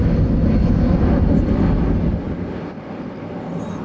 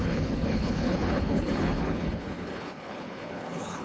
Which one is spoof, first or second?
second